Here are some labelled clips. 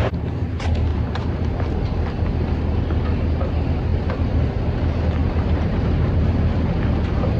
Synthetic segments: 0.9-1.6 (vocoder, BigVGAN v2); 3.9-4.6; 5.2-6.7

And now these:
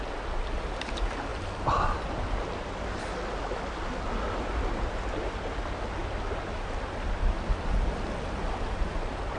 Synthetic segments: 6.0-7.2 (vocoder, BigVGAN v2)

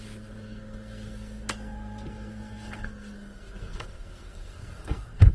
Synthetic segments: 0.0-5.3 (codec, SNAC)

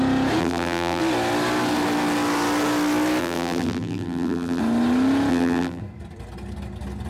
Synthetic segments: 0.4-1.0 (vocoder, BigVGAN v2); 3.2-4.6; 5.3-5.8